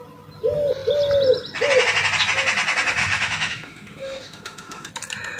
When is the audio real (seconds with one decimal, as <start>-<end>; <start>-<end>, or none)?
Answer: 0.0-3.0; 4.9-5.4